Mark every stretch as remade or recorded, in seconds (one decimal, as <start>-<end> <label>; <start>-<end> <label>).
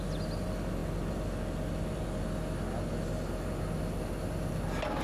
0.0-5.0 recorded